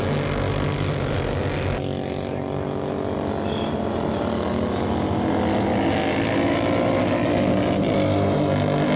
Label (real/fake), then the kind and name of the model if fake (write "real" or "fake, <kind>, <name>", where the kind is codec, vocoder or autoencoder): real